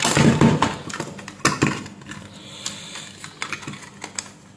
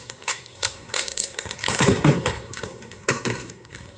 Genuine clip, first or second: first